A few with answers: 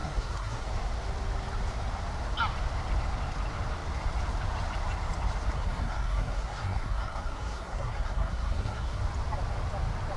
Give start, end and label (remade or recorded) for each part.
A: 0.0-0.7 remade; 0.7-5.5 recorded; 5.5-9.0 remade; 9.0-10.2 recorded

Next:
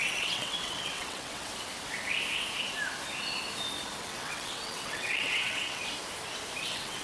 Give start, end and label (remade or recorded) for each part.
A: 0.0-1.5 remade; 1.5-4.0 recorded; 4.0-5.8 remade; 5.8-6.6 recorded; 6.6-7.0 remade

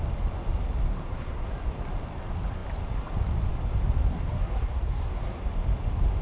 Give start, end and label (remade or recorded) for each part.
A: 0.0-0.9 recorded; 0.9-1.5 remade; 1.5-4.1 recorded; 4.1-5.4 remade; 5.4-6.2 recorded